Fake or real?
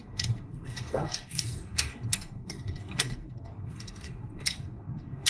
fake